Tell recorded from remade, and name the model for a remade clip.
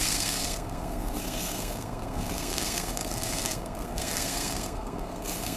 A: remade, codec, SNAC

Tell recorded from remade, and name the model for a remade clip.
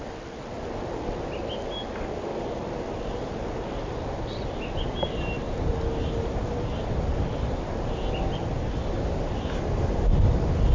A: recorded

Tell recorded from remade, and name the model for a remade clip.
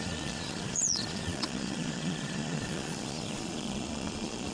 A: remade, vocoder, Vocos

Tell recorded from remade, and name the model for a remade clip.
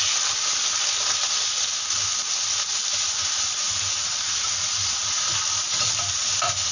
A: recorded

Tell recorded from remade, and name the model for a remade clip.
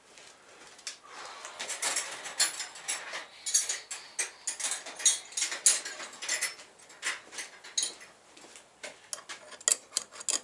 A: recorded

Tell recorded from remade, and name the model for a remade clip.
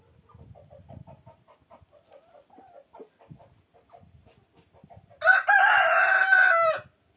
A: recorded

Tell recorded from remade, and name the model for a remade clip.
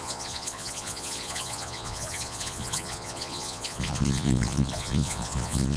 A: remade, vocoder, Vocos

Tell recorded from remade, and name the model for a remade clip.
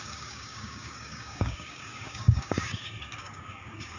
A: remade, codec, DAC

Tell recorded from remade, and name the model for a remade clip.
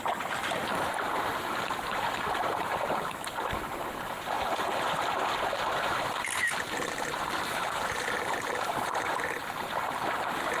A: recorded